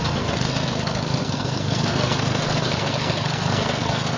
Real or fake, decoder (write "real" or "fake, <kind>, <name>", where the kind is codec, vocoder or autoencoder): fake, codec, SNAC